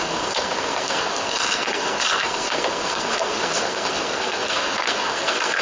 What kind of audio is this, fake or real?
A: fake